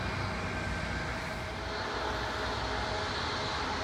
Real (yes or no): yes